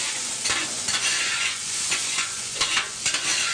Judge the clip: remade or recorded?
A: remade